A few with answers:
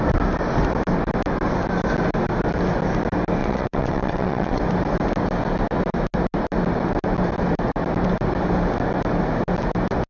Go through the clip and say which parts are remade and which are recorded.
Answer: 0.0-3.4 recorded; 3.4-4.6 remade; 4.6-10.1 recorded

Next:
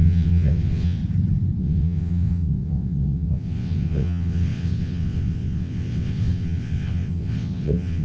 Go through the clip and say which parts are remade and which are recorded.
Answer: 0.0-1.0 remade; 1.0-1.6 recorded; 1.6-8.0 remade

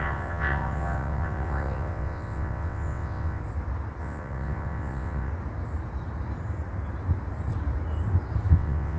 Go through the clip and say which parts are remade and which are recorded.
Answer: 0.0-3.4 remade; 3.4-4.0 recorded; 4.0-5.3 remade; 5.3-8.5 recorded; 8.5-9.0 remade